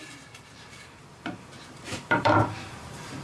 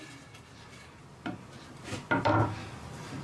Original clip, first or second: second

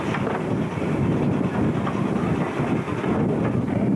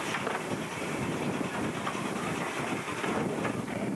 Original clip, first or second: first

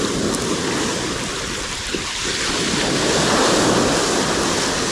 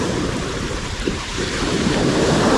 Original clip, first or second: first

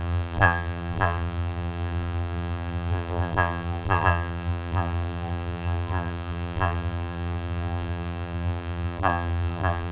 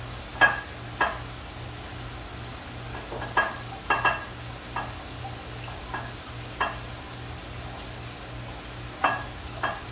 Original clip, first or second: second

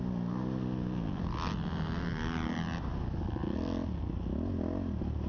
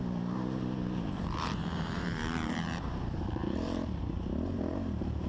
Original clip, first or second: first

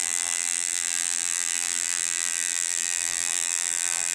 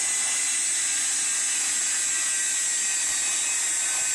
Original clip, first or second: second